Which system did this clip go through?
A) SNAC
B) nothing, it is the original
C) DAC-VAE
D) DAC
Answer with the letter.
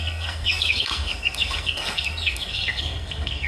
A